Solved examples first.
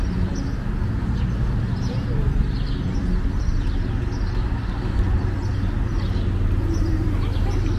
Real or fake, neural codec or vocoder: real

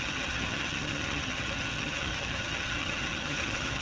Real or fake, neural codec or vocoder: fake, vocoder, HiFi-GAN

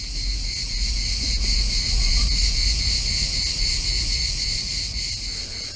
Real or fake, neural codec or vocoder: fake, vocoder, Vocos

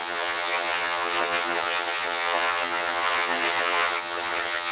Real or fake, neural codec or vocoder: fake, vocoder, HiFi-GAN